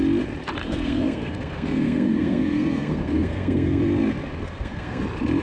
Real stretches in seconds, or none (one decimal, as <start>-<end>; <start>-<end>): 0.0-0.6; 3.8-4.4; 5.0-5.4

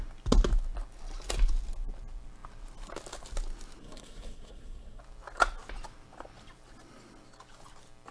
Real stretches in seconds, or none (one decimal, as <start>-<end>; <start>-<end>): 0.0-3.8; 5.0-8.1

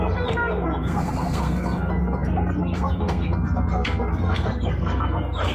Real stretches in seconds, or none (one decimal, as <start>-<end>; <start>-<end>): none

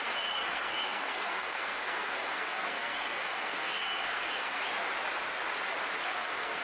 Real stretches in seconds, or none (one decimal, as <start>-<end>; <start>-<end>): 4.6-6.1

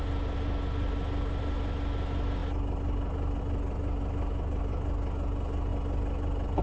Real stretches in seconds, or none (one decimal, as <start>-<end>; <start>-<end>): 0.0-6.6

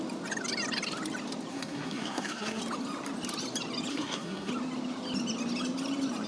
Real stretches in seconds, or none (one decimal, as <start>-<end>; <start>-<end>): 0.0-1.5; 2.6-3.9; 4.5-6.3

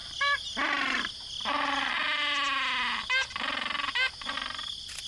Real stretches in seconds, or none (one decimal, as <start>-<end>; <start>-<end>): 0.0-5.1

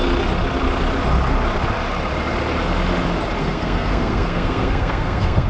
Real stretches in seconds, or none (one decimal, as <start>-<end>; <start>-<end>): 0.0-3.4